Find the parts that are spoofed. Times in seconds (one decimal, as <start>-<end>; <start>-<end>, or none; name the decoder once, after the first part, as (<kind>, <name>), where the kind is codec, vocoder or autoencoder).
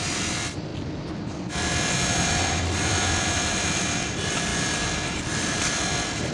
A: 0.0-0.7 (vocoder, BigVGAN v2); 2.3-4.5; 5.1-6.3